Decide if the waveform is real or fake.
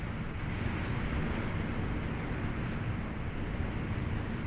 real